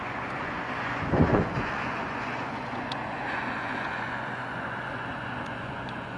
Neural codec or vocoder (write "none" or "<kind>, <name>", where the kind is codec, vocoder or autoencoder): vocoder, Vocos